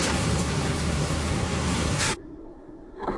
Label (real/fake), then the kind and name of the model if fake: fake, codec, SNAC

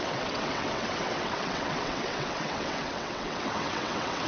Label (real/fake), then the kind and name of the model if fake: fake, vocoder, WaveNeXt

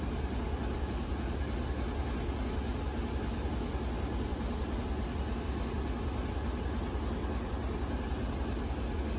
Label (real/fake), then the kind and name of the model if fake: real